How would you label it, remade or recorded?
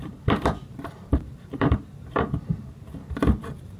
remade